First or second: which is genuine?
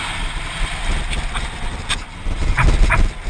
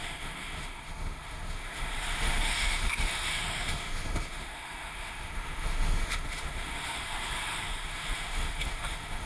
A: first